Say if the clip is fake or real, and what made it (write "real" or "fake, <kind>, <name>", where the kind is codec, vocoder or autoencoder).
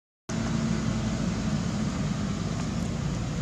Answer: real